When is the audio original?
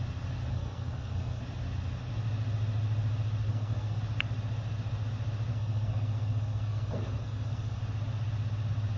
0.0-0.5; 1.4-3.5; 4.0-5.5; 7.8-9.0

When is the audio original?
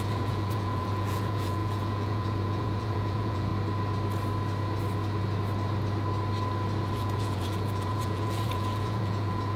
3.5-6.9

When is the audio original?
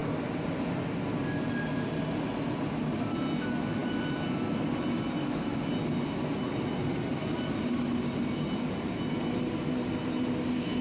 0.0-10.8